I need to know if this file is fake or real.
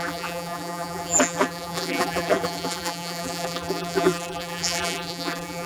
fake